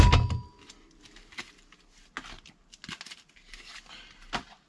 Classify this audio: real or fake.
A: real